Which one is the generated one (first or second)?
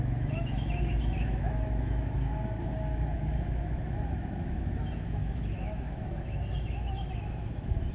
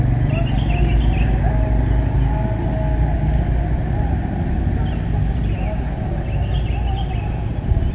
first